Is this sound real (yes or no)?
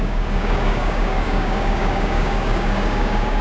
no